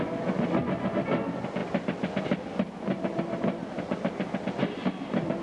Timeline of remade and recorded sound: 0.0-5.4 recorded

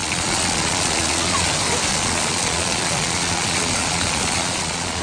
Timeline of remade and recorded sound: 0.0-1.5 remade; 1.5-1.9 recorded; 1.9-5.0 remade

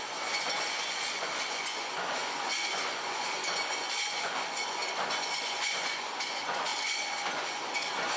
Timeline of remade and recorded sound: 0.0-8.2 remade

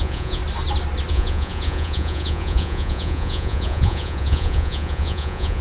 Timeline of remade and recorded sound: 0.0-0.4 remade; 0.4-1.1 recorded; 1.1-5.6 remade

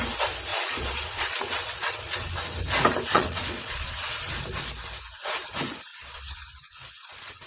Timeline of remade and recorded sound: 0.0-0.5 recorded; 0.5-2.3 remade; 2.3-3.1 recorded; 3.1-4.2 remade; 4.2-5.9 recorded; 5.9-7.0 remade; 7.0-7.5 recorded

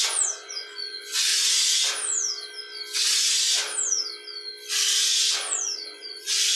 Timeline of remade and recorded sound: 0.0-1.3 remade; 1.3-5.1 recorded; 5.1-6.6 remade

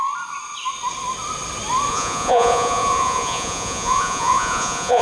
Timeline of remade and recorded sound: 0.0-1.9 recorded; 1.9-5.0 remade

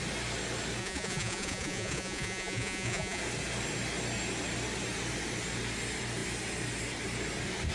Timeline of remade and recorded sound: 0.0-0.8 recorded; 0.8-3.2 remade; 3.2-7.7 recorded